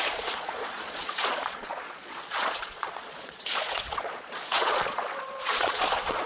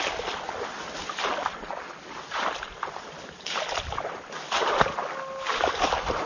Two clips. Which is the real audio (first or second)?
second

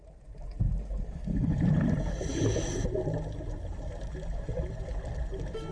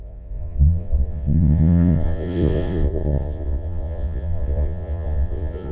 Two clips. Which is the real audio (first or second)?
first